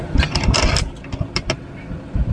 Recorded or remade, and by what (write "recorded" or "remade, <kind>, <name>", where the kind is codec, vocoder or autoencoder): recorded